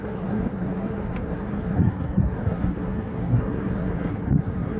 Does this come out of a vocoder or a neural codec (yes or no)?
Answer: yes